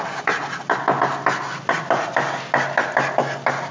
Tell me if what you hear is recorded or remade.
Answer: recorded